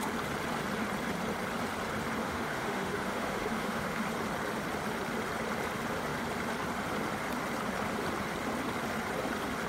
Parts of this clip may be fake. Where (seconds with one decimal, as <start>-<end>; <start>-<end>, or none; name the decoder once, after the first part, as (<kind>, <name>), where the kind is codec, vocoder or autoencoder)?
2.2-4.0 (autoencoder, DAC-VAE)

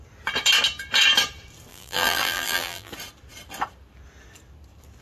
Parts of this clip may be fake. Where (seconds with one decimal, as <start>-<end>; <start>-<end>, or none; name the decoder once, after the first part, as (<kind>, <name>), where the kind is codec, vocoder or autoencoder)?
1.7-2.9 (vocoder, BigVGAN v2)

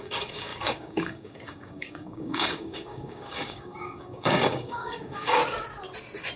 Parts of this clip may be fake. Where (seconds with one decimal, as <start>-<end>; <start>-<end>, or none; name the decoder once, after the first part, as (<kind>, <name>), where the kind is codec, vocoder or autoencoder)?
0.0-5.4 (codec, DAC)

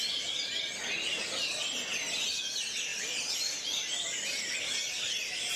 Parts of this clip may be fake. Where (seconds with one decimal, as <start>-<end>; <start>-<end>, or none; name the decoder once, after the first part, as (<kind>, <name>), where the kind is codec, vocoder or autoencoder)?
none

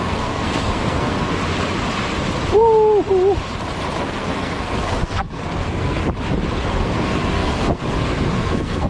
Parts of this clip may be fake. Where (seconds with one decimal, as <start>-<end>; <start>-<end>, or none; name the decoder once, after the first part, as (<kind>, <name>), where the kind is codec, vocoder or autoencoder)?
0.0-1.4 (codec, SNAC); 4.0-6.0; 6.7-8.9

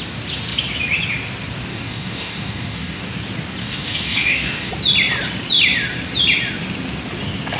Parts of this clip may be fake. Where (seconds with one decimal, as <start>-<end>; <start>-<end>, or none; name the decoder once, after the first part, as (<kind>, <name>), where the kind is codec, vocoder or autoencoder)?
1.7-3.0 (codec, DAC); 3.6-4.7